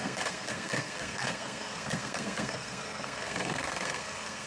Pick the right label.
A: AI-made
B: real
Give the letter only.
A